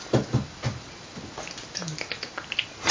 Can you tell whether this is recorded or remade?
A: recorded